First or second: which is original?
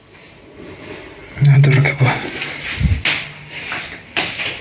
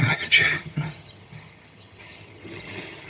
first